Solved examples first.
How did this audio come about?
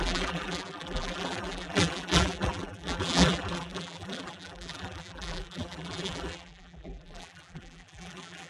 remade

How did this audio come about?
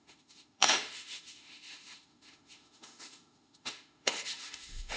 remade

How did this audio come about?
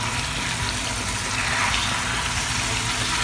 recorded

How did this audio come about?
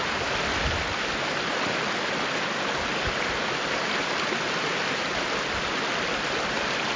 recorded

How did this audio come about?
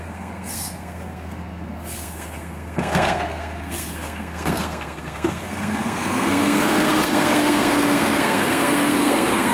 remade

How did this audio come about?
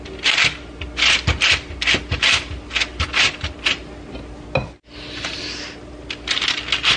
recorded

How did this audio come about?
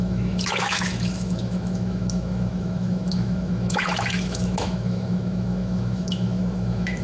remade